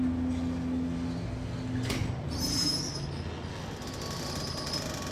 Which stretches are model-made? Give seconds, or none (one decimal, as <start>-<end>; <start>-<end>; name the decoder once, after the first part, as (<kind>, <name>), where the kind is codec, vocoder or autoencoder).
2.0-2.8 (vocoder, BigVGAN v2)